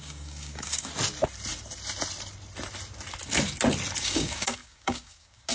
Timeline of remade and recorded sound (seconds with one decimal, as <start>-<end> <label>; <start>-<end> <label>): 0.0-0.9 remade; 0.9-4.0 recorded; 4.0-5.5 remade